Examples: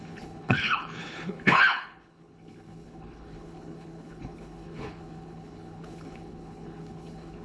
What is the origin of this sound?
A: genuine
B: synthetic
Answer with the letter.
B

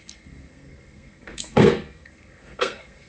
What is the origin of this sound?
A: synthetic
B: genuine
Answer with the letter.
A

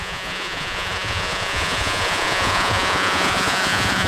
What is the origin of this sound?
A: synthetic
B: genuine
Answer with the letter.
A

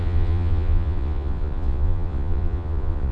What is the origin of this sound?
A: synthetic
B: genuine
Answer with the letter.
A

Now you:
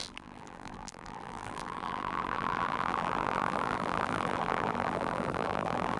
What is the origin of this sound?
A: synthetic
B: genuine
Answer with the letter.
A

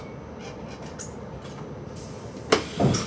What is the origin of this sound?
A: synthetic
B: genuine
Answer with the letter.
B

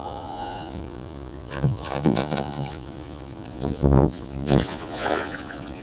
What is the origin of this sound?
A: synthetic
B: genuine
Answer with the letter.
A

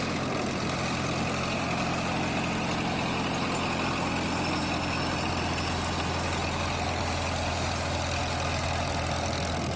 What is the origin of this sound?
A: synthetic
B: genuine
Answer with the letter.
B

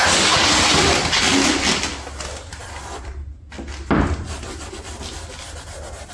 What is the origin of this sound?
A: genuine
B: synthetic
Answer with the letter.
A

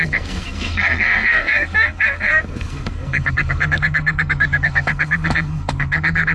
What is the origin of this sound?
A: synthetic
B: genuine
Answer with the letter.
A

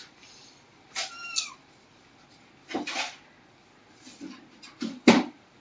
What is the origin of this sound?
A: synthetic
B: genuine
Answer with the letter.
B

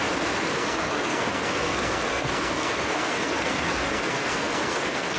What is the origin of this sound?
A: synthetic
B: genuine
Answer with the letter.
A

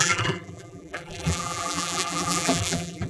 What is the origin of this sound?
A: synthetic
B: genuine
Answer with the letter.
A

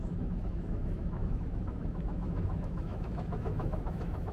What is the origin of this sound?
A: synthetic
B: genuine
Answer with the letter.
A